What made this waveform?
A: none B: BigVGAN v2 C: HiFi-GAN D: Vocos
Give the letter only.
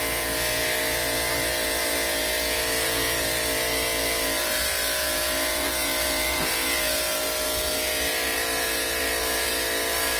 D